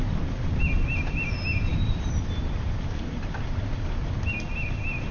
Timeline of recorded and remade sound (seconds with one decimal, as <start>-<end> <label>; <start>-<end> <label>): 0.0-1.7 recorded; 1.7-3.4 remade; 3.4-5.1 recorded